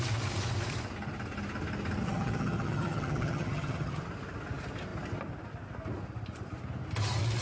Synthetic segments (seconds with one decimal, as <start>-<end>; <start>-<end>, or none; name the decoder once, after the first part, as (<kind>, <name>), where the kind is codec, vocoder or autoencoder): 2.0-4.0 (vocoder, HiFi-GAN)